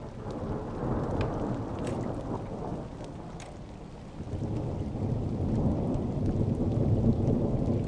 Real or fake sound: real